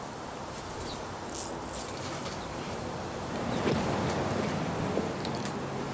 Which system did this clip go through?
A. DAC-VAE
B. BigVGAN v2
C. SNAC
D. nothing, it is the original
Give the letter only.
D